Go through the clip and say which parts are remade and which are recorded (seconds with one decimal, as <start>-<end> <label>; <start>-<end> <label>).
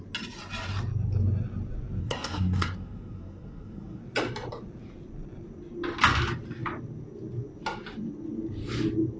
0.0-2.0 recorded; 2.0-4.0 remade; 4.0-9.2 recorded